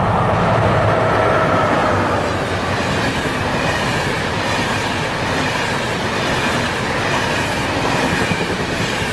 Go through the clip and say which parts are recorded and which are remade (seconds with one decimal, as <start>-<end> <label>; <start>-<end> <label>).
0.0-1.8 remade; 1.8-3.0 recorded; 3.0-9.1 remade